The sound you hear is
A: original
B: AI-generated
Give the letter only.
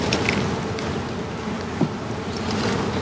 A